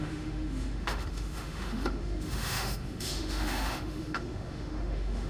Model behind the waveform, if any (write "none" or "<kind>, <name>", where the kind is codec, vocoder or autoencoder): autoencoder, DAC-VAE